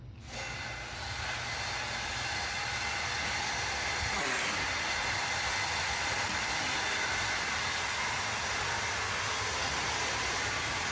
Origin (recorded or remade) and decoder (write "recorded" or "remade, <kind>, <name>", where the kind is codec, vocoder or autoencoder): recorded